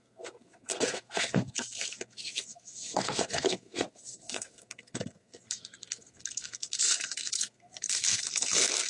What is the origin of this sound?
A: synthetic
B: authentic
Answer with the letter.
A